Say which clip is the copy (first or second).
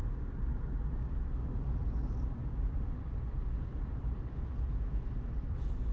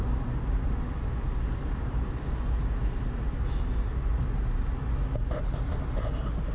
first